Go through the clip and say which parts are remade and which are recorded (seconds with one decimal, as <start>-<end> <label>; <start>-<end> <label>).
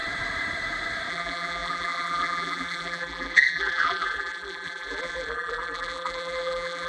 0.0-1.1 recorded; 1.1-6.9 remade